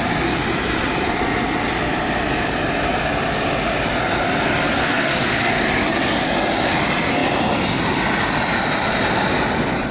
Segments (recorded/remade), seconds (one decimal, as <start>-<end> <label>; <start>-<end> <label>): 0.0-4.8 recorded; 4.8-5.5 remade; 5.5-9.9 recorded